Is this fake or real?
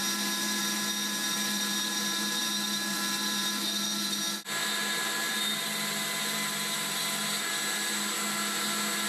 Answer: real